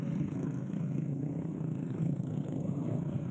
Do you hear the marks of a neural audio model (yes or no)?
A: yes